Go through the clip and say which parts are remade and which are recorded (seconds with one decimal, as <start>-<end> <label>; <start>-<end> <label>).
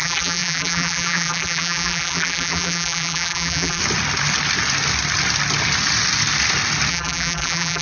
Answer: 0.0-3.8 remade; 3.8-6.9 recorded; 6.9-7.8 remade